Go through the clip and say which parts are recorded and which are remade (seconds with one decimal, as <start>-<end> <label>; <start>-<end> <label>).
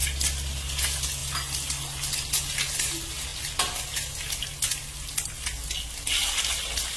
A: 0.0-7.0 recorded